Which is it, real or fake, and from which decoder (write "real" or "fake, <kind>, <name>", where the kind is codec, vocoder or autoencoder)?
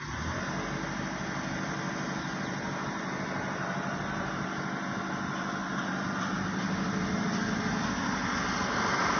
real